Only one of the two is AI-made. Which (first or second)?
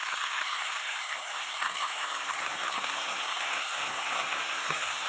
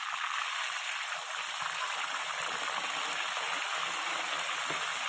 first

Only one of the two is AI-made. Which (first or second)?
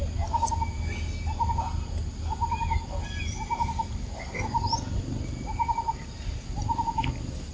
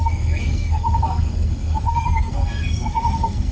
second